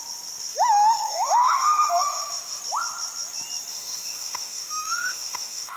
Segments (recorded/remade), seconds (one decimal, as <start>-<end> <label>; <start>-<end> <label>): 0.0-0.5 recorded; 0.5-2.6 remade; 2.6-3.7 recorded; 3.7-5.8 remade